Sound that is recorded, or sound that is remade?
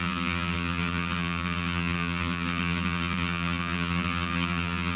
remade